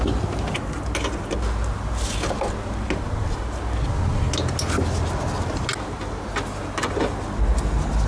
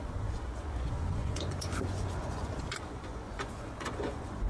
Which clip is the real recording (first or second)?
first